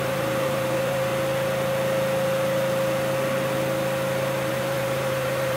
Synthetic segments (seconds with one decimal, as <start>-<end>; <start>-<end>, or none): 0.0-1.1; 4.5-5.6